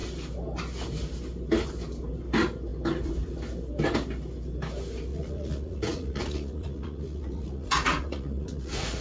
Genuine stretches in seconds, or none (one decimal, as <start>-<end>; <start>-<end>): 0.0-5.1

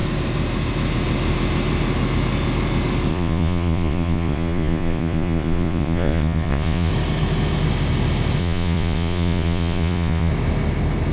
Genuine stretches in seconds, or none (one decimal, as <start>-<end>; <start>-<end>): 0.0-3.1; 6.9-8.4; 10.3-11.1